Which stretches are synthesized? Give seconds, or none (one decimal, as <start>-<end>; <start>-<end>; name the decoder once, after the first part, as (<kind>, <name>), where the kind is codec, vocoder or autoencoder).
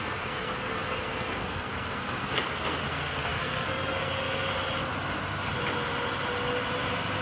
0.0-4.5 (codec, SNAC)